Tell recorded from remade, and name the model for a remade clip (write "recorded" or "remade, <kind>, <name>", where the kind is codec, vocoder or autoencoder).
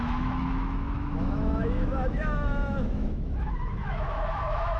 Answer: remade, autoencoder, DAC-VAE